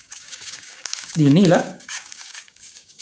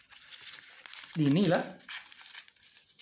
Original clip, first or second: second